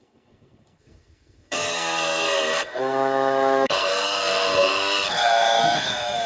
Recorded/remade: remade